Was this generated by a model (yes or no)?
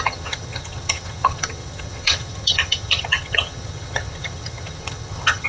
yes